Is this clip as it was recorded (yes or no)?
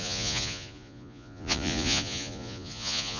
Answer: no